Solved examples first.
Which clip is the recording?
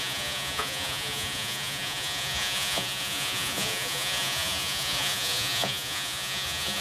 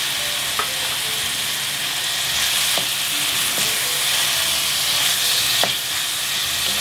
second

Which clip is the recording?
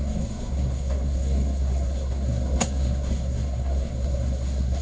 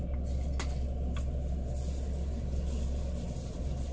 second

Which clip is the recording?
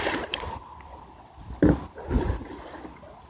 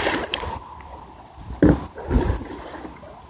second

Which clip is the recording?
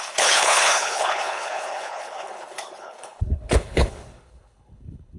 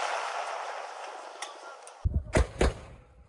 second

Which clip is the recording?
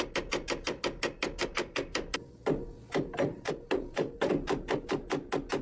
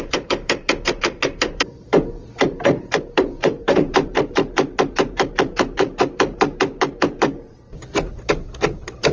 first